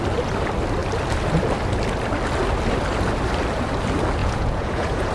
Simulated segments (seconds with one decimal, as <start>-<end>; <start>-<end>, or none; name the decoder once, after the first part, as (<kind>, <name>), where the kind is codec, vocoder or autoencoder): 4.2-5.1 (vocoder, Vocos)